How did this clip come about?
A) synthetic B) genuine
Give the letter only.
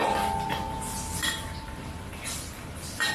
B